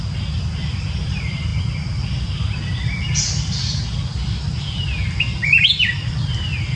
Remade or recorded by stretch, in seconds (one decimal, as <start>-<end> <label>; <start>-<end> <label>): 0.0-6.8 recorded